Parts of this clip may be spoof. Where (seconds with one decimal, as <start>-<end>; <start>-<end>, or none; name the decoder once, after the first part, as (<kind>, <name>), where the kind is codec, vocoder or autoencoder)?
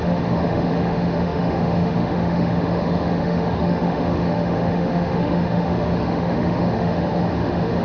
0.0-7.8 (autoencoder, DAC-VAE)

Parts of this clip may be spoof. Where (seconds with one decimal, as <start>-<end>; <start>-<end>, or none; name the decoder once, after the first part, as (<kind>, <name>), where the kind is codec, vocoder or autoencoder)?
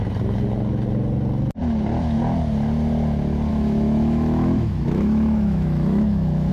3.5-6.5 (autoencoder, DAC-VAE)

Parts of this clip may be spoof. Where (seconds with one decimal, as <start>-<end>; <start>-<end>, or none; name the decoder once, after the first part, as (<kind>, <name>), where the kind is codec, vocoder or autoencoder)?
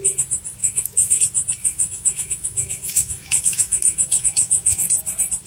0.6-1.2 (autoencoder, DAC-VAE); 1.6-4.9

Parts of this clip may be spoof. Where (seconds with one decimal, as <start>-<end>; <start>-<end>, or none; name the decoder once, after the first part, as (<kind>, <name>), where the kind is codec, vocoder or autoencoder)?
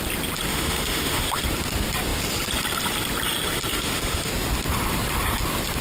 0.5-1.4 (autoencoder, DAC-VAE); 3.7-4.3